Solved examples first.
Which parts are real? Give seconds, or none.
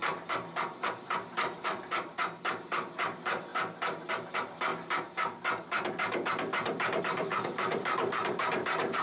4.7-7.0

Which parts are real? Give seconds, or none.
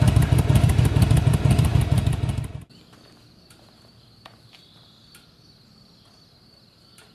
0.0-7.1